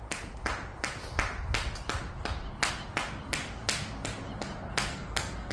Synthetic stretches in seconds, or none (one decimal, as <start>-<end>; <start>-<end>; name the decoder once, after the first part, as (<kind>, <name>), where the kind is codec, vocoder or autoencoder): 4.9-5.5 (codec, SNAC)